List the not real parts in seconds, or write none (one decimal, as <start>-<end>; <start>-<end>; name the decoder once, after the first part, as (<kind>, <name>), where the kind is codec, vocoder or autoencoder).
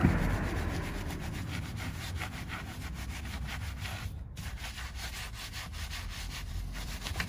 0.0-4.4 (vocoder, BigVGAN v2); 5.7-7.3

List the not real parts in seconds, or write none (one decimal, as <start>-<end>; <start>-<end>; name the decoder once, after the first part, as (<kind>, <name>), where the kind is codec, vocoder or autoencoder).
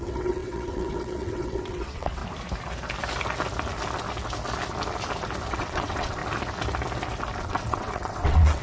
0.0-2.2 (vocoder, WaveNeXt); 5.5-6.2; 7.4-8.6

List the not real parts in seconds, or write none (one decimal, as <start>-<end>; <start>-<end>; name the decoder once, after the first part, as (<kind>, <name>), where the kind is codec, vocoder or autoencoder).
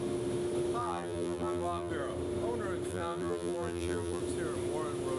0.8-1.9 (vocoder, BigVGAN v2); 2.9-4.2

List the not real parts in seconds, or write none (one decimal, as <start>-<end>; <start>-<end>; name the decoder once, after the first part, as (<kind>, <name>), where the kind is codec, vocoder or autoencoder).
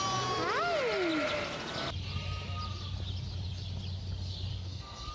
4.5-5.1 (codec, SNAC)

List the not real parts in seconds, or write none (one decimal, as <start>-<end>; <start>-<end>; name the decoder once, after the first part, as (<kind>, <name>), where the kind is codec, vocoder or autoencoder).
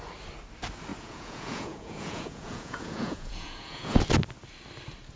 0.9-4.0 (vocoder, Vocos)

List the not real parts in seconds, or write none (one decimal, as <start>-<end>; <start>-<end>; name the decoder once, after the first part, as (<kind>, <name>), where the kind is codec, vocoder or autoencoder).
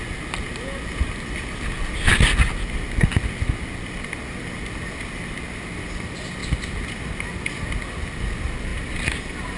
none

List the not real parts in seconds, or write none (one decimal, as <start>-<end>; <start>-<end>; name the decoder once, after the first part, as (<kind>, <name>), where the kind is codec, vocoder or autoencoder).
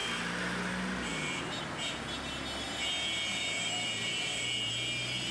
3.3-4.7 (vocoder, BigVGAN v2)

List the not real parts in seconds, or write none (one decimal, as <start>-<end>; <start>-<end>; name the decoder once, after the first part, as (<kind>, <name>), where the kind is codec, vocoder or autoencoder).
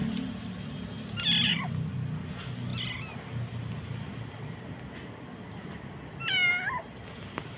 none